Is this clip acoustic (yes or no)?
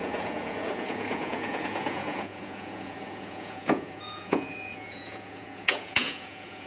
no